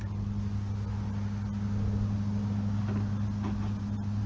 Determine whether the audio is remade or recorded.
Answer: recorded